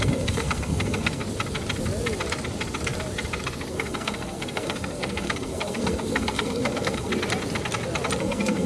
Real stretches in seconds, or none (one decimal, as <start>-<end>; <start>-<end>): 1.2-3.7; 7.1-8.2